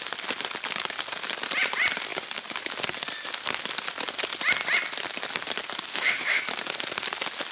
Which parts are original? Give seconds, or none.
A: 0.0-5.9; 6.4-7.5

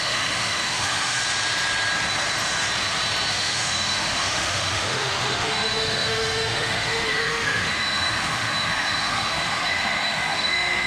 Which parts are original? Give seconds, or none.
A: 1.2-3.3

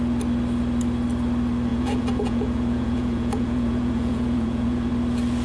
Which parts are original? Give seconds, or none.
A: 0.0-1.7; 4.9-5.4

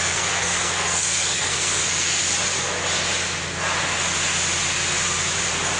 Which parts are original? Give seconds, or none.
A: 2.2-5.8

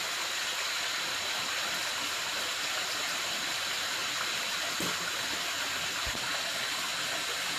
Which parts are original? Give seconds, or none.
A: 0.0-7.6

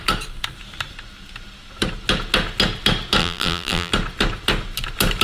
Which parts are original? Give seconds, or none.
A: 0.0-3.2; 3.9-5.2

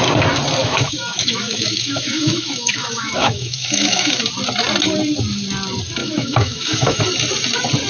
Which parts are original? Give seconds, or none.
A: 0.0-0.6; 4.2-6.0; 7.0-7.9

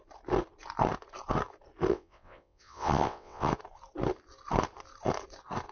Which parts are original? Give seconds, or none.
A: 0.0-1.9; 3.5-5.7